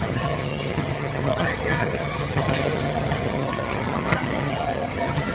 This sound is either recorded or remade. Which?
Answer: remade